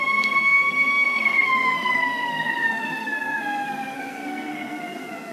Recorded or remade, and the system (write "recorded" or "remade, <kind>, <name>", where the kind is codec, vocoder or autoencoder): remade, codec, SNAC